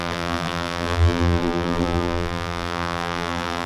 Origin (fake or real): fake